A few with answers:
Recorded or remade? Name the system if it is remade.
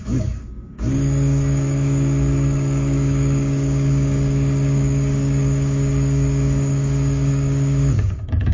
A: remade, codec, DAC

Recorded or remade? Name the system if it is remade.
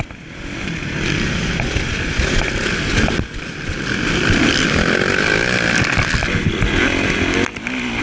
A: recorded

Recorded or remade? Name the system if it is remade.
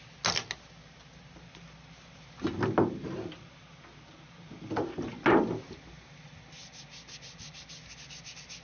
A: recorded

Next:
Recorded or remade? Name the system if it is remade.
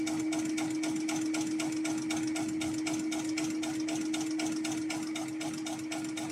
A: recorded